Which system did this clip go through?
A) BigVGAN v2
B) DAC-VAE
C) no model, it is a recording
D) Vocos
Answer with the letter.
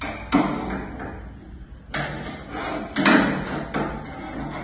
C